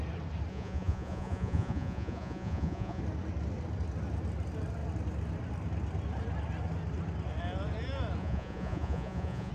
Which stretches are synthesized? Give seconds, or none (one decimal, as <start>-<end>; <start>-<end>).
0.5-3.0; 8.2-9.5